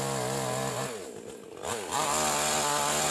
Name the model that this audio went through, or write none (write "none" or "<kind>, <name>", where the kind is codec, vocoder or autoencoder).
none